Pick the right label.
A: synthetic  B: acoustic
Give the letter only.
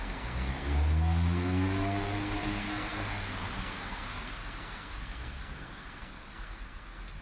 A